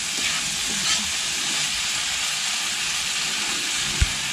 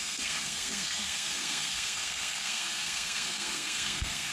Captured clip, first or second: first